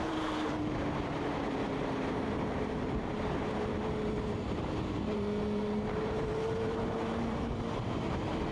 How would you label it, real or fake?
fake